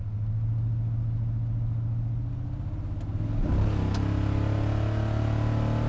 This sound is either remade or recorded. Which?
recorded